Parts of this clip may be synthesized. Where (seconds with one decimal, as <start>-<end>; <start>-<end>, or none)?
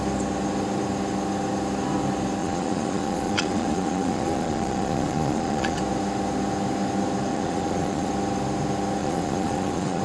2.4-5.8; 7.3-8.1; 9.0-10.0